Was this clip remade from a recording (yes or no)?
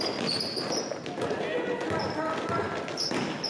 no